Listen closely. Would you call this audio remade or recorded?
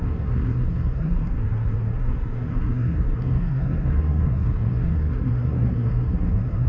remade